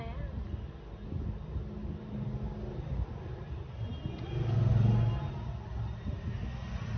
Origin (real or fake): real